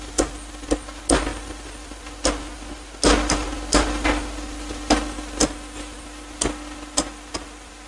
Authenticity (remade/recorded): recorded